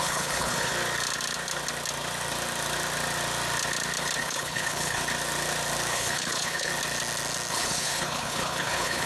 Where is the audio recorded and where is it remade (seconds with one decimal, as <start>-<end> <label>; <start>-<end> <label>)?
0.0-0.7 remade; 0.7-4.2 recorded; 4.2-5.0 remade; 5.0-5.9 recorded; 5.9-6.7 remade; 6.7-7.5 recorded; 7.5-9.1 remade